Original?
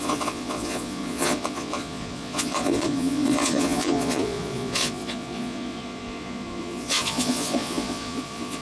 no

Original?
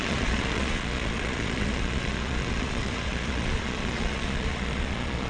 no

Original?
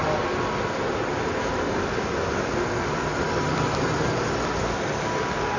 yes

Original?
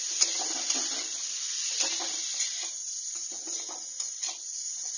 yes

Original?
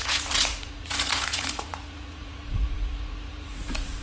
no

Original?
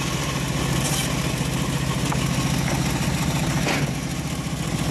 yes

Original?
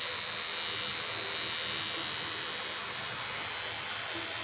yes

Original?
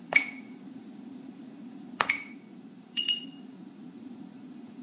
no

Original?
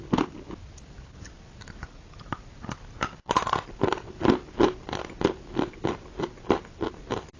yes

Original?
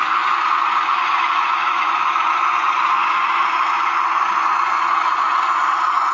no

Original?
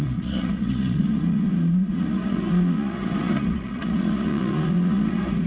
no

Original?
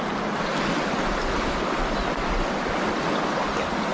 yes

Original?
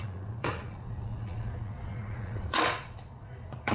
no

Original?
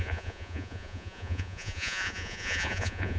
no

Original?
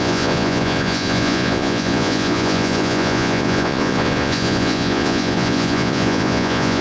no